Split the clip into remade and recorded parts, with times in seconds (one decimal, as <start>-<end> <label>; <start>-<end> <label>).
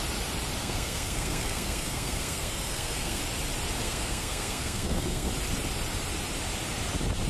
0.0-0.6 recorded; 0.6-3.2 remade; 3.2-3.8 recorded; 3.8-5.3 remade; 5.3-7.3 recorded